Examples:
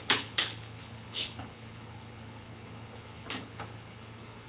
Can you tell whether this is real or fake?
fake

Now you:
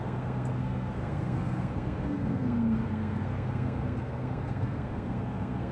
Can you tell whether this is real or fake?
fake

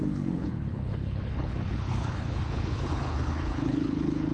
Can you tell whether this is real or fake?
fake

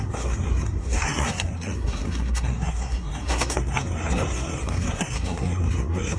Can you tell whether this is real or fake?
fake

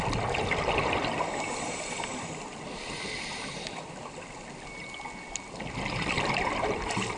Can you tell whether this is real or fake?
real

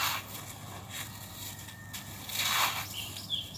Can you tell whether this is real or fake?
real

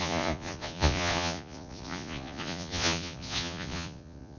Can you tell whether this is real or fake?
fake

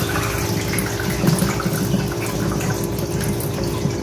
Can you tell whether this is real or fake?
real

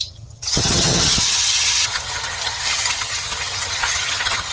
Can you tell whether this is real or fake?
fake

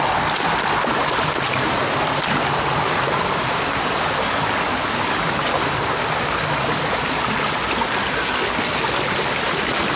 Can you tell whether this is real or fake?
real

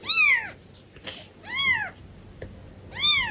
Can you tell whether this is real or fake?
real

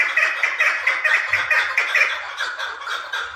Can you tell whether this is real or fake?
fake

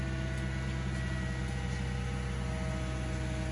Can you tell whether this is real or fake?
real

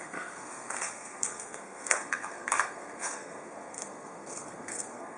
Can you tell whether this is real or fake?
fake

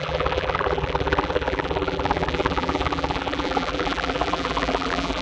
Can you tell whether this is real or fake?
fake